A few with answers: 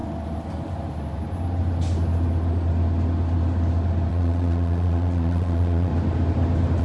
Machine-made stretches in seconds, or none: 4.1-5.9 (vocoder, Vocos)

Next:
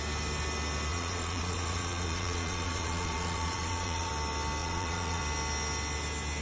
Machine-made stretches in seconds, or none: 0.9-4.1 (vocoder, Vocos); 4.6-5.2

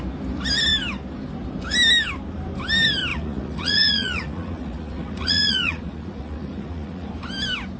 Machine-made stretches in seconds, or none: 3.1-7.1 (vocoder, Vocos)

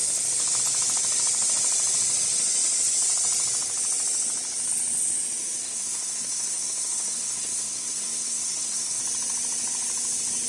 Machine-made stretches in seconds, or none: 5.6-9.0 (codec, SNAC)